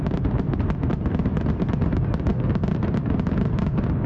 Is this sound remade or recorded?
recorded